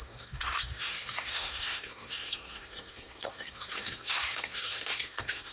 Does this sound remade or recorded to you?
remade